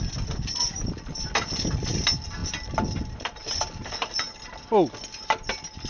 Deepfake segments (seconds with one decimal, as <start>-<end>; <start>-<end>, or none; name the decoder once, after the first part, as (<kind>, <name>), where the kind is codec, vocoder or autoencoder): none